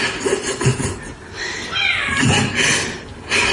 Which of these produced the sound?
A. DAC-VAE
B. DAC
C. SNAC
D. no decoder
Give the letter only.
D